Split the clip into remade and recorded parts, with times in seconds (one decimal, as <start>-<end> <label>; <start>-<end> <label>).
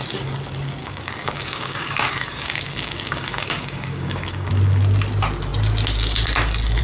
0.0-0.8 recorded; 0.8-4.5 remade; 4.5-6.8 recorded